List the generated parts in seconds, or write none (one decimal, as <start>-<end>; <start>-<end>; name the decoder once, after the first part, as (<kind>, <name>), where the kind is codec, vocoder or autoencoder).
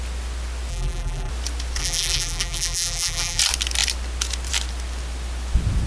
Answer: 0.7-1.3 (vocoder, BigVGAN v2); 1.8-3.4